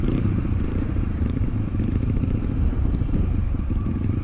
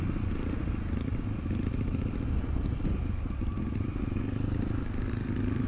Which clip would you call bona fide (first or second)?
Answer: second